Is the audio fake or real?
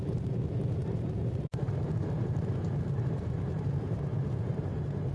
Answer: fake